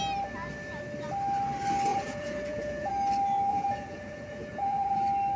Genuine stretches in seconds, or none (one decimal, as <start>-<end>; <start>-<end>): 0.0-1.9; 2.9-3.5; 5.0-5.4